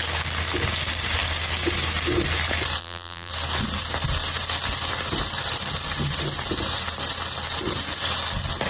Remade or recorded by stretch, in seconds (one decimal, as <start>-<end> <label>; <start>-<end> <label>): 0.0-2.8 recorded; 2.8-3.3 remade; 3.3-8.7 recorded

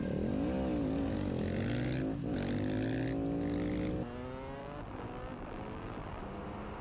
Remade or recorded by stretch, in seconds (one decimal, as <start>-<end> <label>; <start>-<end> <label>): 0.0-4.6 recorded; 4.6-6.2 remade; 6.2-6.8 recorded

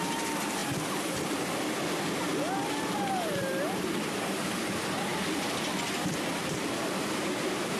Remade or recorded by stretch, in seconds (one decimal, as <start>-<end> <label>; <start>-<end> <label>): 0.0-7.8 remade

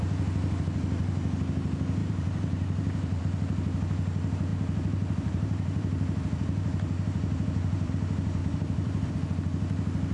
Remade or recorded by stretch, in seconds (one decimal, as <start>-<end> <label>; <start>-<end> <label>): 0.0-2.0 recorded; 2.0-3.2 remade; 3.2-4.5 recorded; 4.5-7.9 remade; 7.9-8.4 recorded; 8.4-9.1 remade; 9.1-10.1 recorded

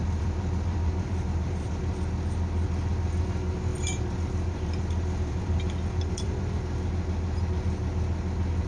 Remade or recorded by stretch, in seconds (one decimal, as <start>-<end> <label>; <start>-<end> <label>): 0.0-1.7 remade; 1.7-3.7 recorded; 3.7-6.5 remade; 6.5-8.7 recorded

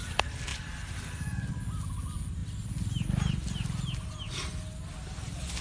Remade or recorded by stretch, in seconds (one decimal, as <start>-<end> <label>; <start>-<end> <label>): 0.0-5.6 recorded

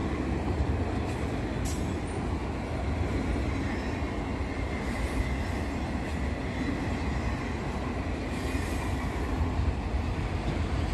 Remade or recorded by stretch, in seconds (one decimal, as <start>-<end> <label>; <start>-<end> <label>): 0.0-0.7 remade; 0.7-4.3 recorded; 4.3-5.2 remade; 5.2-10.9 recorded